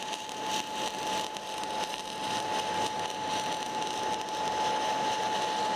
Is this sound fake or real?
real